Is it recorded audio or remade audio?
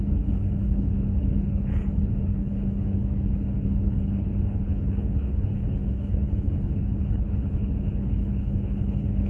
remade